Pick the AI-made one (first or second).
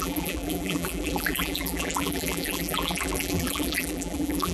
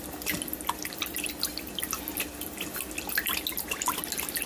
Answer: first